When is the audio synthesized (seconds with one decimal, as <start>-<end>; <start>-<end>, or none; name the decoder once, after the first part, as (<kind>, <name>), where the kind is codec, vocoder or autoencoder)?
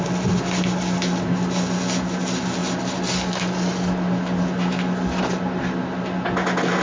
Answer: none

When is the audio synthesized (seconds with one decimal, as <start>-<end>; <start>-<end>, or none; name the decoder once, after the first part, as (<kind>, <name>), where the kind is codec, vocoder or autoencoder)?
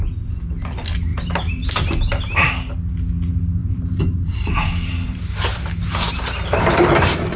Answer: 1.1-1.7 (vocoder, BigVGAN v2); 3.6-7.4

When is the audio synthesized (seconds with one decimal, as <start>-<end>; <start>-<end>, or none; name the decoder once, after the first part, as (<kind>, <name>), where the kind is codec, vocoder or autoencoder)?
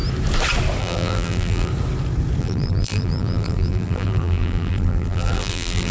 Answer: 0.8-1.7 (vocoder, BigVGAN v2); 2.4-5.9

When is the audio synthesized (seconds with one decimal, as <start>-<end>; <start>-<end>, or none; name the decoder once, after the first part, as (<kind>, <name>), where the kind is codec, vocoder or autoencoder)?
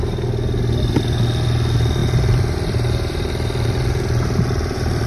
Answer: 2.0-5.1 (vocoder, BigVGAN v2)